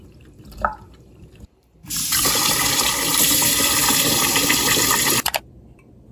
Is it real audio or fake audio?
fake